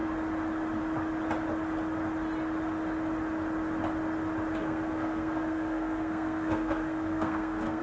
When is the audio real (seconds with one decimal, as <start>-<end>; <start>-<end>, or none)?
0.0-4.6